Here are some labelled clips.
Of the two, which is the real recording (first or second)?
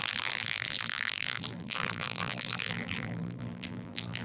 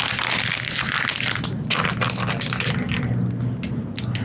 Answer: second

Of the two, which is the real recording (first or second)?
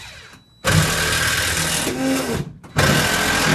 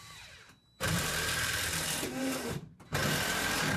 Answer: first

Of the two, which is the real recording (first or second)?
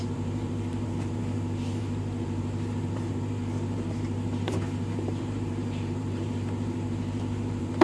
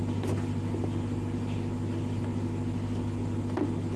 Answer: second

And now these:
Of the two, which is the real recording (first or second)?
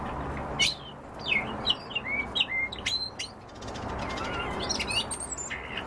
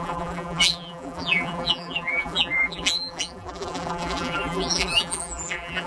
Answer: first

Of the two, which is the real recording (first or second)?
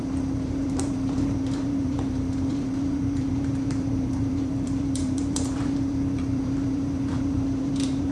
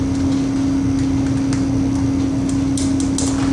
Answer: second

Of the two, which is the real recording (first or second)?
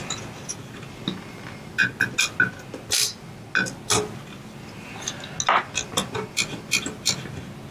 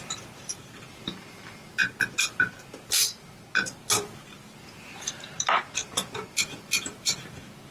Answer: first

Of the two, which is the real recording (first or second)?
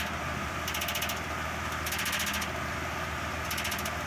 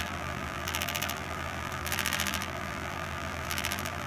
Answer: first